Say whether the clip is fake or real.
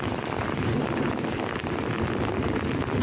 fake